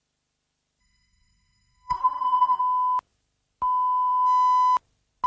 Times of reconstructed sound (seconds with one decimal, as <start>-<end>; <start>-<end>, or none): 0.8-2.6